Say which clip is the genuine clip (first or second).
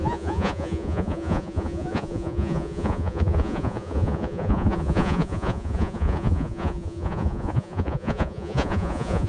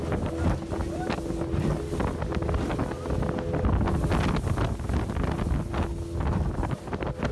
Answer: second